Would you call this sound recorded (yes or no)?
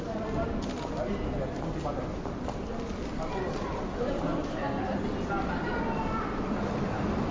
yes